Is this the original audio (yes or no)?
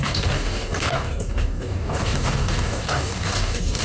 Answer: no